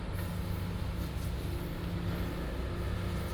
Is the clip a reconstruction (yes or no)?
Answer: no